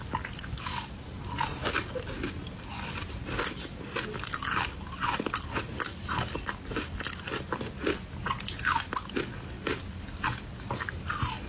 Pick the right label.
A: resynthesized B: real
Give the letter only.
B